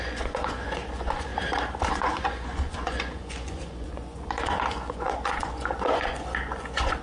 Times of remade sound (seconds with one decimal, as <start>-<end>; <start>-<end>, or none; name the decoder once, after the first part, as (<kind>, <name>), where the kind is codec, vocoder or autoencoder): 0.0-1.3 (vocoder, Vocos); 1.9-7.0